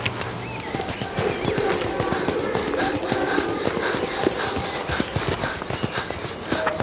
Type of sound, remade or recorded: recorded